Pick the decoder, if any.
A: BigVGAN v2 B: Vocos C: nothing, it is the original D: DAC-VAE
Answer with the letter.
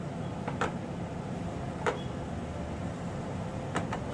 C